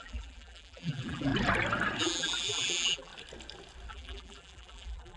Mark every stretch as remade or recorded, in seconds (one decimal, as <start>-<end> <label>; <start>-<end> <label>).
0.0-1.3 remade; 1.3-2.0 recorded; 2.0-3.1 remade; 3.1-3.9 recorded; 3.9-5.2 remade